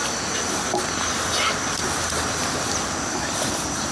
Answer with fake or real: real